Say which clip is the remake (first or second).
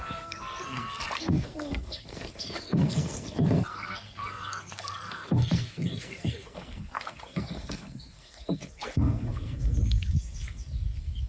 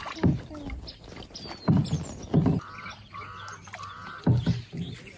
first